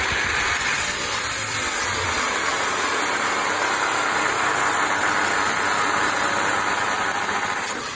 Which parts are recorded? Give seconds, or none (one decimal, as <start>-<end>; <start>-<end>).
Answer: none

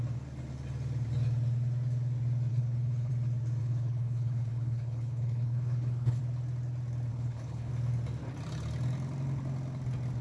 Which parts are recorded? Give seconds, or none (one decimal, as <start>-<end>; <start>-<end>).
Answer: 0.0-2.5; 3.1-3.6; 6.2-7.1; 7.7-10.2

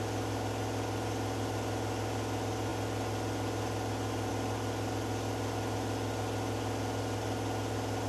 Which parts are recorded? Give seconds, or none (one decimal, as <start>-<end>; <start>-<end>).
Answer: 0.0-8.1

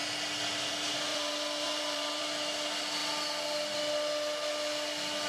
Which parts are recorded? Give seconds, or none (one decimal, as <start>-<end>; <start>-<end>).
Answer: 0.0-1.1; 2.2-5.3

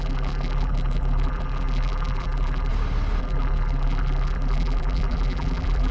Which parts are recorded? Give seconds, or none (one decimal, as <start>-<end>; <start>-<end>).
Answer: 2.7-3.2